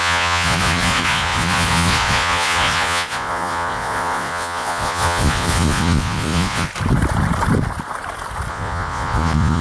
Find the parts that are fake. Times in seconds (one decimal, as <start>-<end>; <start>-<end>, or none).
0.0-6.7; 8.5-9.6